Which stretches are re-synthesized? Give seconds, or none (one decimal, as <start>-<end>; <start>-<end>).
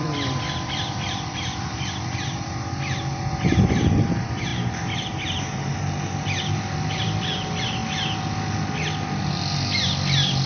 0.0-4.5; 6.9-7.8; 9.8-10.5